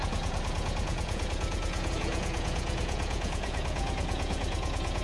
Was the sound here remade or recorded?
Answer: remade